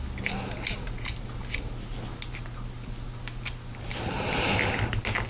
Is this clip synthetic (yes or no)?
no